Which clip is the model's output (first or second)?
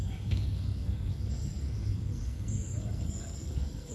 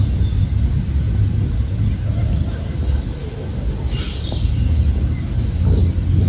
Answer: first